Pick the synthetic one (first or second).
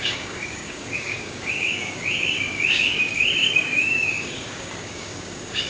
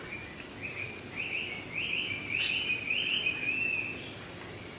first